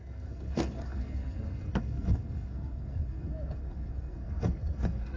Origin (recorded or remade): remade